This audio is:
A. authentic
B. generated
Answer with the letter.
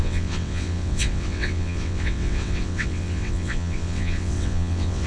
B